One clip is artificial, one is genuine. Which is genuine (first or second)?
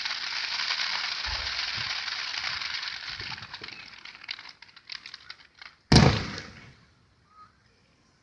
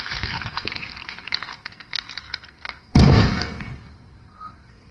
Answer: first